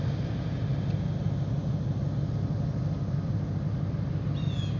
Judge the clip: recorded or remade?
recorded